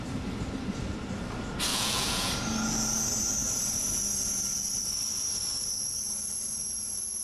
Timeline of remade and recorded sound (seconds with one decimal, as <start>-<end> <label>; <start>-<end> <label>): 0.0-1.7 recorded; 1.7-2.3 remade; 2.3-7.2 recorded